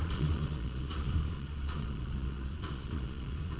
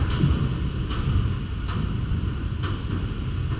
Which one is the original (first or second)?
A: second